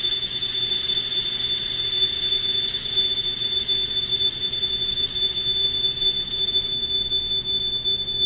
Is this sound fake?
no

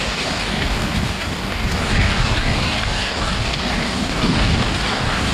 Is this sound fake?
yes